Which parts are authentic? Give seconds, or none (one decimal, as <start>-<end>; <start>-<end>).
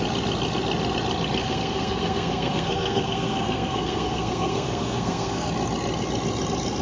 0.0-1.4; 5.5-6.8